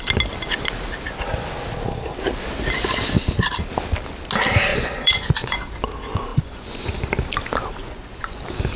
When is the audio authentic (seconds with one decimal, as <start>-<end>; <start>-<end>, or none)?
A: 0.0-4.7; 5.6-6.3; 6.9-7.8; 8.4-8.8